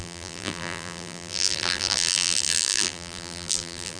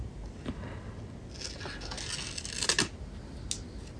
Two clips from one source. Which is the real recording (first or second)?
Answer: second